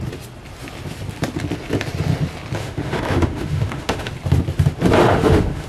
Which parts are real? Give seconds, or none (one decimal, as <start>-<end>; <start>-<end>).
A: 0.0-2.6; 4.1-5.0